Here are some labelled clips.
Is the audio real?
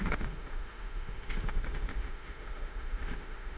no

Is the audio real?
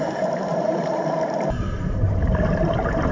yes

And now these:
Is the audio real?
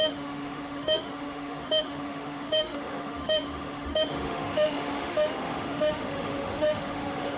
no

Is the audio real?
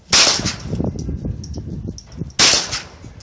yes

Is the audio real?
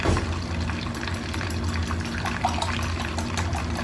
yes